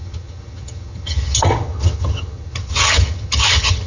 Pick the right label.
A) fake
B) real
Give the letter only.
A